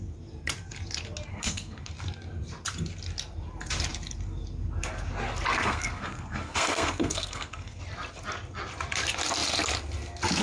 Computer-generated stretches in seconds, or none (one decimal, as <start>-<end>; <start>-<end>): 1.3-1.9; 5.5-7.8